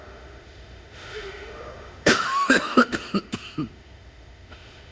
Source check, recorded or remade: remade